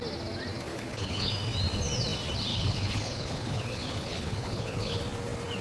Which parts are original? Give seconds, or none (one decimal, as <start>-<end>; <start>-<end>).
0.0-0.7; 1.3-2.5; 5.0-5.6

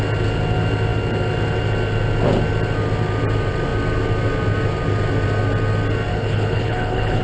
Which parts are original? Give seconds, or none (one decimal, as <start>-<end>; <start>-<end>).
0.0-6.1